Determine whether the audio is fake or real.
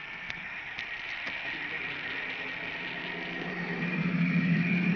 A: real